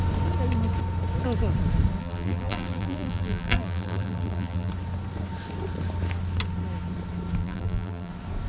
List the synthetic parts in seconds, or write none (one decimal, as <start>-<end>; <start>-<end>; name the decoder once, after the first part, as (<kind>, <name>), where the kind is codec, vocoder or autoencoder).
2.0-4.7 (vocoder, BigVGAN v2); 7.4-8.1